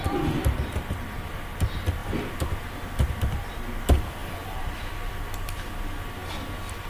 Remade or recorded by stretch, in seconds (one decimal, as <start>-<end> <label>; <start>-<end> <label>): 0.0-4.2 remade; 4.2-4.7 recorded; 4.7-6.2 remade; 6.2-6.9 recorded

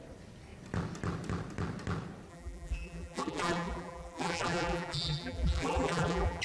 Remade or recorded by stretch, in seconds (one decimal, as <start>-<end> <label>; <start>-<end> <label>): 0.0-2.3 recorded; 2.3-6.4 remade